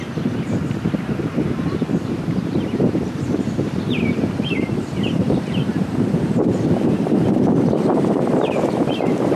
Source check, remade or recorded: remade